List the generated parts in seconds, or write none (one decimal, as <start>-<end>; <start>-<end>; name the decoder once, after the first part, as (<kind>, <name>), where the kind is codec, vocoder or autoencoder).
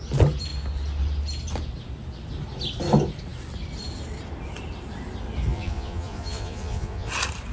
5.5-7.1 (vocoder, Vocos)